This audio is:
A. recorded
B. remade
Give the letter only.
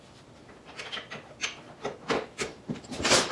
A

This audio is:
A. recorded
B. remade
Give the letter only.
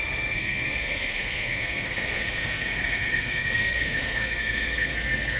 B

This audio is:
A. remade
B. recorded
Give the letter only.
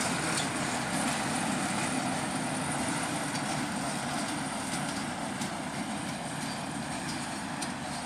B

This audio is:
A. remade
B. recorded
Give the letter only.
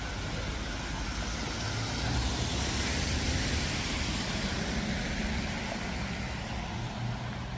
B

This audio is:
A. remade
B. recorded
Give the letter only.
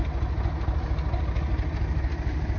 B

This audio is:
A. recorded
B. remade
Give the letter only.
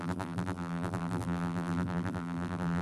B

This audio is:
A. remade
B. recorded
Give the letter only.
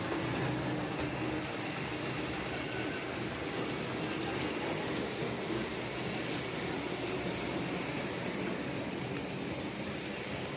B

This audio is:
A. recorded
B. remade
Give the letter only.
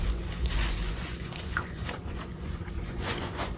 B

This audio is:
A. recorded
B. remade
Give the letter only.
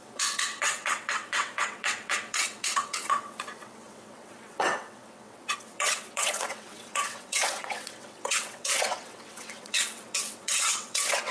B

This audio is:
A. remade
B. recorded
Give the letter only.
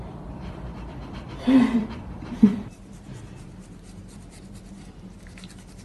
A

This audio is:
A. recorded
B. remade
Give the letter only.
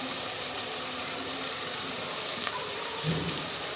B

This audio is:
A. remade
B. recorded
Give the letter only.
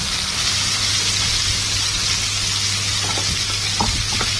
B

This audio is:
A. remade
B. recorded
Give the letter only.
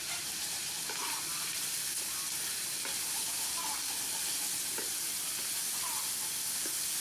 B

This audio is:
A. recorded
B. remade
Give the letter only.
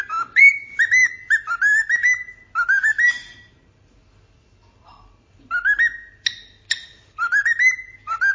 A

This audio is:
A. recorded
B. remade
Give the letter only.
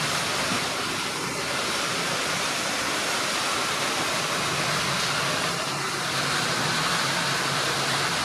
A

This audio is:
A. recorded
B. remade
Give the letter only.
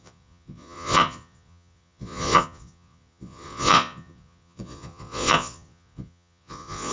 B